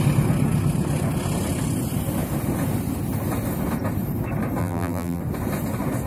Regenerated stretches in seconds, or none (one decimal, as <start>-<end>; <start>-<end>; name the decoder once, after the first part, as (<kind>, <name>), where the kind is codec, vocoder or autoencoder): 4.6-5.2 (vocoder, BigVGAN v2)